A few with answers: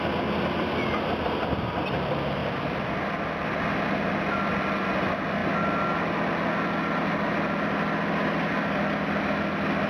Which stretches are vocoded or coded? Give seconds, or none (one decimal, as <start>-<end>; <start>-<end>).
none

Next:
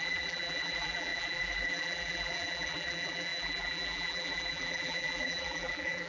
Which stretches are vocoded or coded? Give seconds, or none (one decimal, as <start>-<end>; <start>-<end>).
0.0-6.1

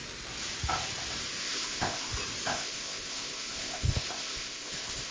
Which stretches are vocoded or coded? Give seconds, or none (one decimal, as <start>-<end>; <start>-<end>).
1.4-2.1; 2.5-5.1

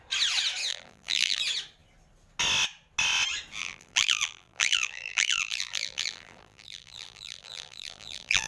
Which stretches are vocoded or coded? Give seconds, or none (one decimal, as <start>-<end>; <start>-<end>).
0.7-1.4; 3.6-8.5

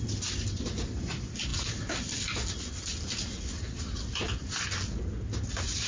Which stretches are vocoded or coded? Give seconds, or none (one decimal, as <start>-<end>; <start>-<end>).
none

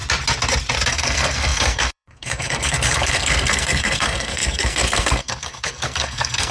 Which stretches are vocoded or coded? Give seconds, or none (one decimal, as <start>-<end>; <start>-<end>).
0.9-6.5

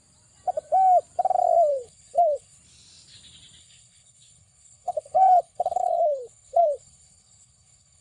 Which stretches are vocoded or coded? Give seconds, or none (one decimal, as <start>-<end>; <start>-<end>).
1.7-2.6; 3.6-8.0

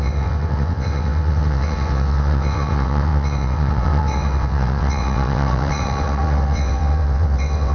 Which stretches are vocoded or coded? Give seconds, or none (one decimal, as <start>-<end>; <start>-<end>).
0.0-7.7